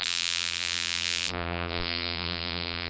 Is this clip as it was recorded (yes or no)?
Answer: no